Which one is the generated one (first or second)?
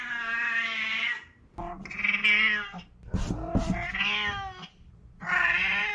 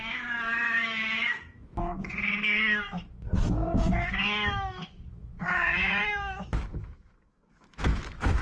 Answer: second